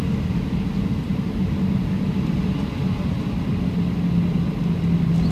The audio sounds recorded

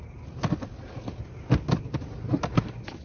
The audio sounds recorded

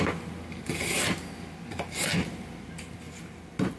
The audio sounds recorded